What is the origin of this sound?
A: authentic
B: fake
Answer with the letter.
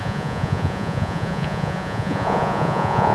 B